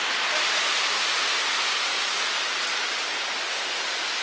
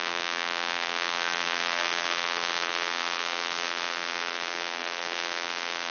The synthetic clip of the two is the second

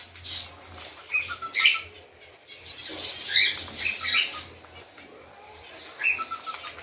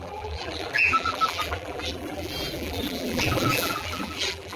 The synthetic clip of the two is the second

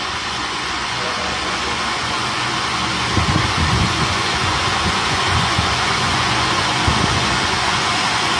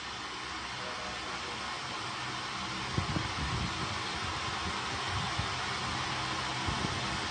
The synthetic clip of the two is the first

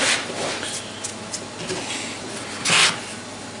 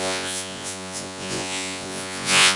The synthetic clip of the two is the second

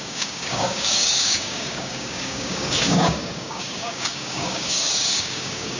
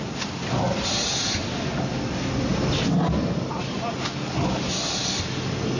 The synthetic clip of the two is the first